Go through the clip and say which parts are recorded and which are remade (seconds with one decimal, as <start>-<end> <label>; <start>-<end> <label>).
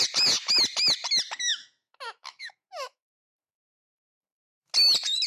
0.0-1.5 recorded; 1.5-4.7 remade; 4.7-5.3 recorded